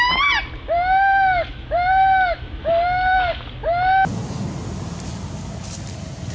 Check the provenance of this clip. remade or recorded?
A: recorded